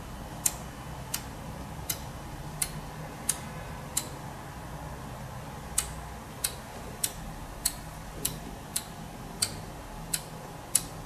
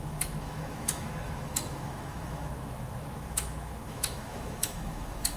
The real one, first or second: first